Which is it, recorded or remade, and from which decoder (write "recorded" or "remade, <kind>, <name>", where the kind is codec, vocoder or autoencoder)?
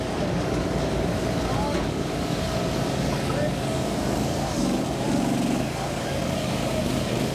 remade, codec, DAC